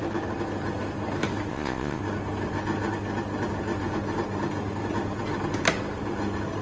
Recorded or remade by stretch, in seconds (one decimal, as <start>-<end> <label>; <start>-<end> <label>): 0.0-1.5 recorded; 1.5-2.0 remade; 2.0-6.6 recorded